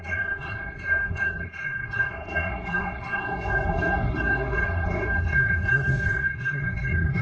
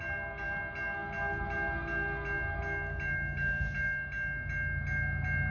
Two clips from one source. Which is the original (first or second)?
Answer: second